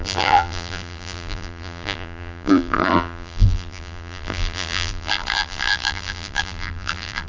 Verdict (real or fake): fake